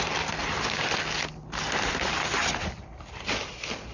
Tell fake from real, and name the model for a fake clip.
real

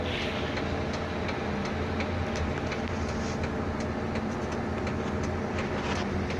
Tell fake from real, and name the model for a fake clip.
real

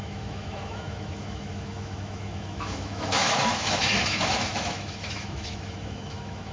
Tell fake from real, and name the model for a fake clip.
fake, autoencoder, DAC-VAE